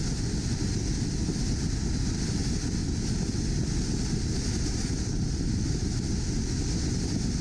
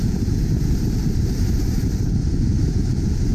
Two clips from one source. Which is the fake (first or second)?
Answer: second